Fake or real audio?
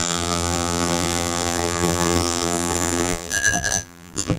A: fake